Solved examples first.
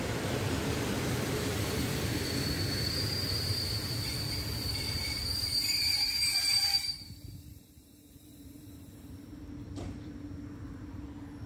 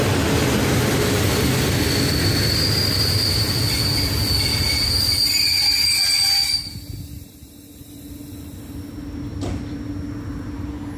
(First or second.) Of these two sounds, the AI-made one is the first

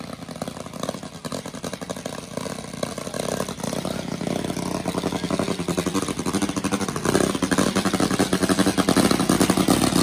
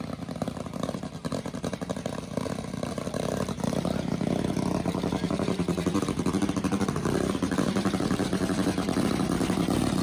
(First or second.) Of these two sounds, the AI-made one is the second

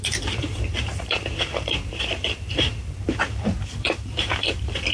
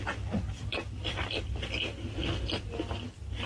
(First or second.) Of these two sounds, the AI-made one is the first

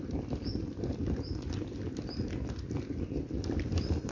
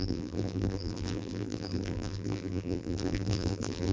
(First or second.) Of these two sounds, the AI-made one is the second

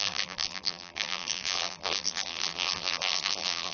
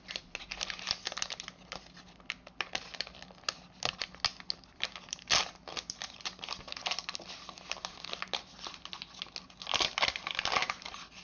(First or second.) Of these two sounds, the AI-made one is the first